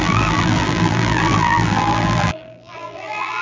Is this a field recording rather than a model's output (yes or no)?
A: no